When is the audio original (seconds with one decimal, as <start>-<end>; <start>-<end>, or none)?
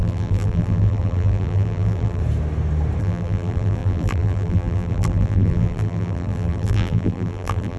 2.2-3.0